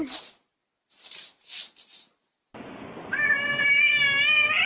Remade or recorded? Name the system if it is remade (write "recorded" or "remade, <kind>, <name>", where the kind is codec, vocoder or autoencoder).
recorded